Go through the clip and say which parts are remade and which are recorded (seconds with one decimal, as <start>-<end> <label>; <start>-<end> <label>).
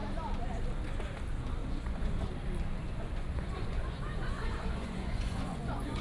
0.0-1.6 recorded; 1.6-2.3 remade; 2.3-2.8 recorded; 2.8-6.0 remade